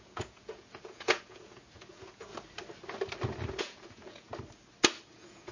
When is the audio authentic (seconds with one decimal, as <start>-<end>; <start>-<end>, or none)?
2.3-3.6; 4.3-5.1